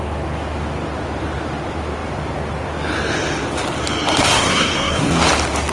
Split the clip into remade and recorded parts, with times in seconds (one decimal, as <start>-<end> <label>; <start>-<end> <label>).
0.0-4.2 recorded; 4.2-5.1 remade; 5.1-5.7 recorded

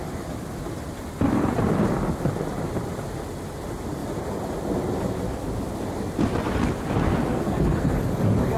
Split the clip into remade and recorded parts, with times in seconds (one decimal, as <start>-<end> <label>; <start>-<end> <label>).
0.0-7.3 recorded; 7.3-7.9 remade; 7.9-8.6 recorded

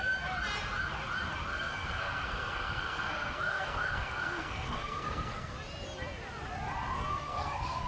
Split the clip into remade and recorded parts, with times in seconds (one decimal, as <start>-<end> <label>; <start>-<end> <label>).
0.0-1.5 recorded; 1.5-5.5 remade; 5.5-7.1 recorded; 7.1-7.9 remade

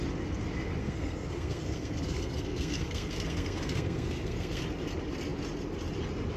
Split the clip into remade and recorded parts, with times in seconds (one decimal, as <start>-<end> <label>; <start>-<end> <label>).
0.0-0.8 recorded; 0.8-4.6 remade; 4.6-6.4 recorded

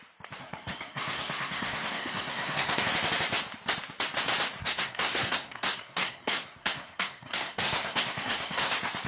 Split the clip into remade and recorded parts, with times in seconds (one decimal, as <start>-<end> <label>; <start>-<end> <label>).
0.0-0.4 recorded; 0.4-2.9 remade; 2.9-4.6 recorded; 4.6-8.7 remade; 8.7-9.1 recorded

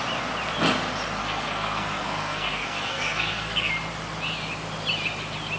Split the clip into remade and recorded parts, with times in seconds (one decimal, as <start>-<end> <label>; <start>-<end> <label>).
0.0-1.2 recorded; 1.2-3.7 remade; 3.7-5.6 recorded

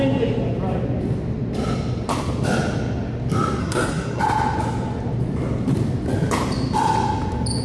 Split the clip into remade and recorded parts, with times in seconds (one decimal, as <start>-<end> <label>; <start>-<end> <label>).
0.0-3.6 recorded; 3.6-4.2 remade; 4.2-7.6 recorded

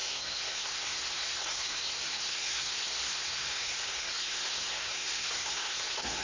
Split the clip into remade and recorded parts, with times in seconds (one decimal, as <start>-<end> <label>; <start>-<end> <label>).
0.0-6.2 remade